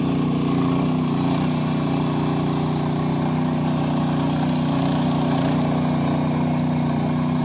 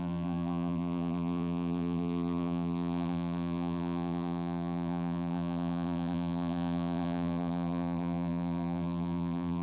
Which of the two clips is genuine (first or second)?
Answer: first